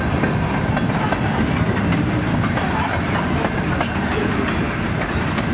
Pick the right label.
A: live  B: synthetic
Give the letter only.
A